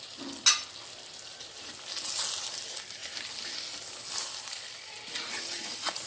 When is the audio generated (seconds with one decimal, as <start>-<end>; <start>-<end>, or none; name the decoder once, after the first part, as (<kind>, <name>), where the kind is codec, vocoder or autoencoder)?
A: none